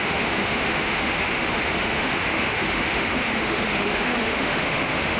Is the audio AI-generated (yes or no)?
yes